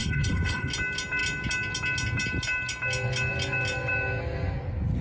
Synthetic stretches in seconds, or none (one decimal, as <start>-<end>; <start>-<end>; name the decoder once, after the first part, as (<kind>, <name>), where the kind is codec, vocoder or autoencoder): 0.0-0.7 (codec, HILCodec)